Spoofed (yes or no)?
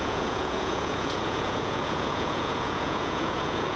yes